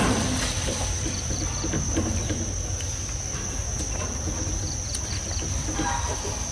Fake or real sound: real